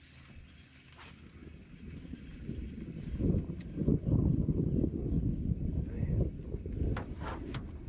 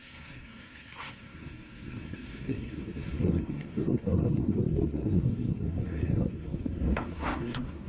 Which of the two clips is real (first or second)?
first